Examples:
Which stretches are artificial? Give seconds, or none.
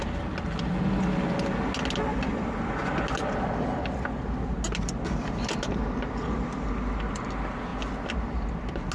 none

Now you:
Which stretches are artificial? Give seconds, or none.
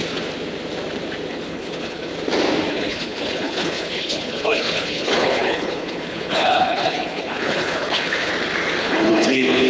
1.3-2.1 (codec, HILCodec); 2.7-8.3; 8.8-9.7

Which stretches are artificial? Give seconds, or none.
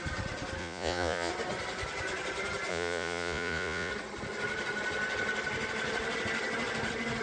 0.6-1.3 (vocoder, Vocos); 2.7-3.9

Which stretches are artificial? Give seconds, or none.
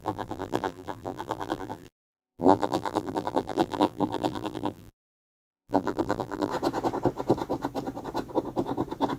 0.0-6.5 (vocoder, BigVGAN v2)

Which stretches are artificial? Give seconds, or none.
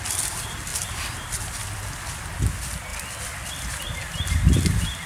none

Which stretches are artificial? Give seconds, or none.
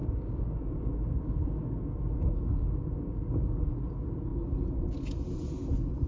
0.0-3.7 (codec, DAC)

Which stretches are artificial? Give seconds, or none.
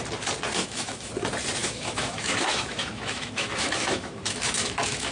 0.6-1.1 (autoencoder, DAC-VAE); 1.6-5.1